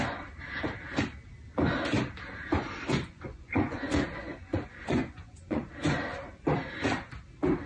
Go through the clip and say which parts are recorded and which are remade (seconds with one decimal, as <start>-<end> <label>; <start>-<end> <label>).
0.0-2.9 recorded; 2.9-5.7 remade; 5.7-7.7 recorded